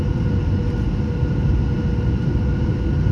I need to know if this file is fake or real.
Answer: real